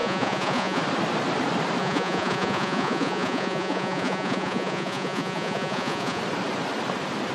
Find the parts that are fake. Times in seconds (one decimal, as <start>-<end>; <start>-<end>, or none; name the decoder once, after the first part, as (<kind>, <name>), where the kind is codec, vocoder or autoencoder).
0.0-0.8 (vocoder, Vocos); 1.8-6.2

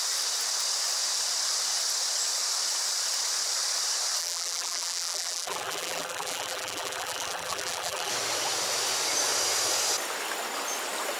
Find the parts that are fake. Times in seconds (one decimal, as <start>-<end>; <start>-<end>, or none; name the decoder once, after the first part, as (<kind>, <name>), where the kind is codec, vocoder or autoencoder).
4.2-8.1 (vocoder, BigVGAN v2)

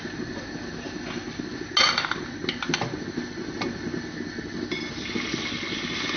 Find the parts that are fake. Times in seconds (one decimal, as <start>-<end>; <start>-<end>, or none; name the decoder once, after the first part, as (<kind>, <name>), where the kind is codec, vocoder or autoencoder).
none

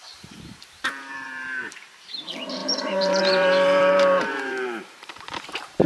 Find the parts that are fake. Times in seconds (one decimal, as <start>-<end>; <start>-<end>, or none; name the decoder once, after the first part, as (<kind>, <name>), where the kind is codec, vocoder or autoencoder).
0.0-5.9 (vocoder, BigVGAN v2)

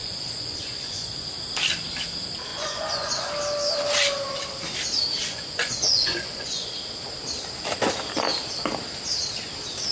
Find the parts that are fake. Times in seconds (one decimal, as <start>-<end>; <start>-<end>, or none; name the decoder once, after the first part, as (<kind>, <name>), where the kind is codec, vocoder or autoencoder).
0.0-1.3 (vocoder, Vocos); 2.5-3.3; 5.2-6.7

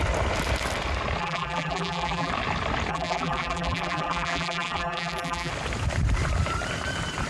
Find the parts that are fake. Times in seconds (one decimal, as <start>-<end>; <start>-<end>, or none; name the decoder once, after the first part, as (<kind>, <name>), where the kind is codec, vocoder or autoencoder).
1.2-2.3 (vocoder, BigVGAN v2); 2.9-5.5

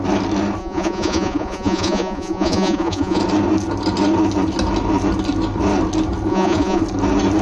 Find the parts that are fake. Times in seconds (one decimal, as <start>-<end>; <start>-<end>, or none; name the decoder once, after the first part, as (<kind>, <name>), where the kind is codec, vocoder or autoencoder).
0.6-3.2 (vocoder, Vocos); 6.3-6.8

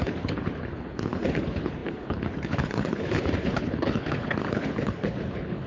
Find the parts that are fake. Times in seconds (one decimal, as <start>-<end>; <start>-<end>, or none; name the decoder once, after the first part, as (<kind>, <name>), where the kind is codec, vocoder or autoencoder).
0.0-5.7 (codec, HILCodec)